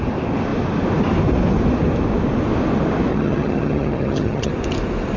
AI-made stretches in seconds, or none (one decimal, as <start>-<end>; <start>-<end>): 3.1-4.5